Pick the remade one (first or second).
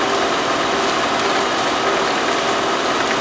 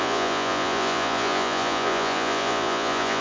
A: second